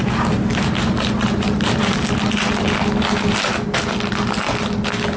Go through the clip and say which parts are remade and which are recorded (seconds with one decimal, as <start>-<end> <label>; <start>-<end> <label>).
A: 0.0-5.2 recorded